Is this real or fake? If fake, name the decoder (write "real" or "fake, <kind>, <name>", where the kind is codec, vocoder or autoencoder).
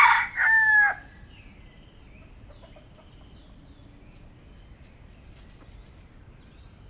real